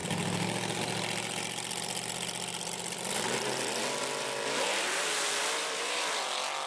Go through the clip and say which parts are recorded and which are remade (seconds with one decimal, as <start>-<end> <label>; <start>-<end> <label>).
0.0-4.0 remade; 4.0-4.7 recorded; 4.7-6.3 remade; 6.3-6.7 recorded